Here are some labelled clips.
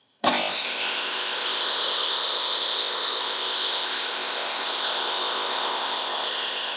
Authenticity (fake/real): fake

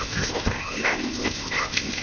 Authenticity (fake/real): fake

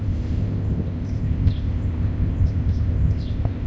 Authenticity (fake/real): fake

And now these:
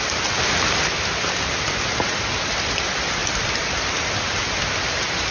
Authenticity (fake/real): real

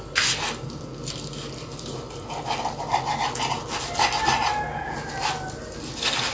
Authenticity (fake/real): real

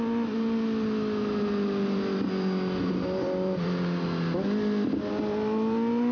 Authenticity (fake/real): real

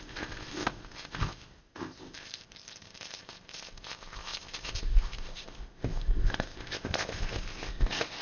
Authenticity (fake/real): fake